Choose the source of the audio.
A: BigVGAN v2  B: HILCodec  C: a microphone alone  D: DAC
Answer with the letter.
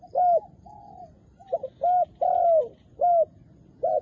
C